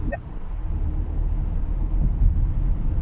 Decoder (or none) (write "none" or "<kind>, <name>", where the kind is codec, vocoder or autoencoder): none